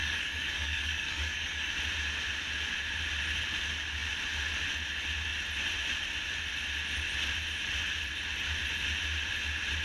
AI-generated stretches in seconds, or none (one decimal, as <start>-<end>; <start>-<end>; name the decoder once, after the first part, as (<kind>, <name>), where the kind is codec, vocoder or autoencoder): 0.0-1.7 (codec, DAC)